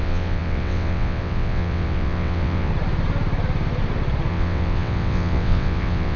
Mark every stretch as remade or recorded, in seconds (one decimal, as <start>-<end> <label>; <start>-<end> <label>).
0.0-2.7 remade; 2.7-4.3 recorded; 4.3-6.2 remade